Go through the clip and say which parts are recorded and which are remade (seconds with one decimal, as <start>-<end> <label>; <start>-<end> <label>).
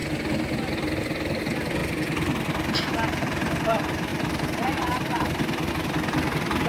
0.0-1.4 recorded; 1.4-1.8 remade; 1.8-2.9 recorded; 2.9-6.7 remade